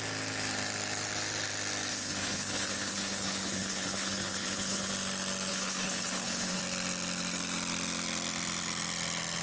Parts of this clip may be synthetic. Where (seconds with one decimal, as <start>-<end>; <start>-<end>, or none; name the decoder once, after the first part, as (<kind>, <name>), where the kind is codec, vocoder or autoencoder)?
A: 1.9-4.9 (codec, HILCodec); 5.5-6.6